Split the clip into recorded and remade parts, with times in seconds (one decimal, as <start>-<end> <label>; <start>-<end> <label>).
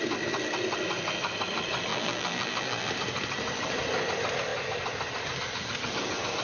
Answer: 0.0-1.9 recorded; 1.9-2.9 remade; 2.9-6.4 recorded